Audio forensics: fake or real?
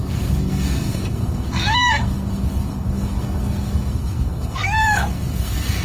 fake